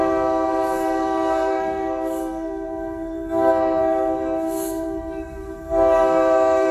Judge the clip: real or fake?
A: fake